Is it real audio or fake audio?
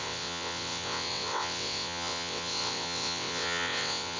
fake